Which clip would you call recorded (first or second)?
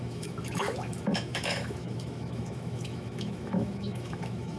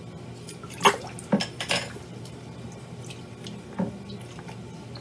second